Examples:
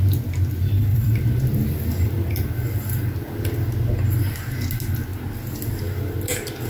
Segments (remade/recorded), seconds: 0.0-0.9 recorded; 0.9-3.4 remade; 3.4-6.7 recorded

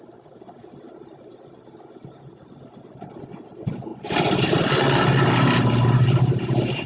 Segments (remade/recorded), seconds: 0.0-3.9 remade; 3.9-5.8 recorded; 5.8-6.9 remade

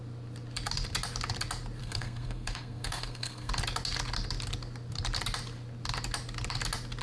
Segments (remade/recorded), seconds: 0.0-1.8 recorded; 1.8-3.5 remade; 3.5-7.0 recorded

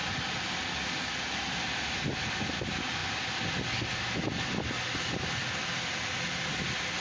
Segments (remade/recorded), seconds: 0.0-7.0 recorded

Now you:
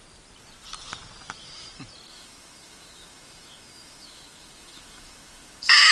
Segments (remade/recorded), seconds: 0.0-2.1 recorded; 2.1-5.9 remade

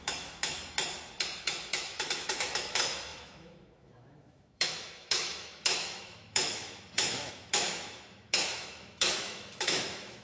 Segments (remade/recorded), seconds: 0.0-0.6 remade; 0.6-1.4 recorded; 1.4-10.2 remade